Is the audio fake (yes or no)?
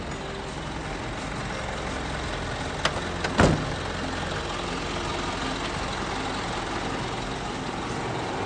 no